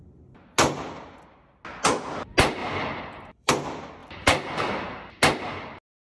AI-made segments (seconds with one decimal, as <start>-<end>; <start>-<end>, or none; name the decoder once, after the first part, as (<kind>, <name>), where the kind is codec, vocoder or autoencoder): 2.6-3.5 (vocoder, BigVGAN v2); 4.0-4.7